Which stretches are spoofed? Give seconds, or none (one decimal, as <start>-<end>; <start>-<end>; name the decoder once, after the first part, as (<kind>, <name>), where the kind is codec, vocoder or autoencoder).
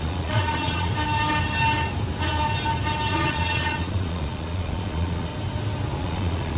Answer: 0.0-0.9 (vocoder, Vocos); 3.1-5.3; 6.0-6.6